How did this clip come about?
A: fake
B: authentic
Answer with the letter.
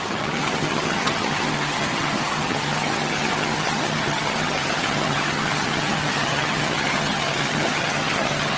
A